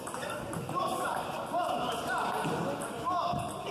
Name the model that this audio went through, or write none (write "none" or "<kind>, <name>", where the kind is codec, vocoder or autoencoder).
none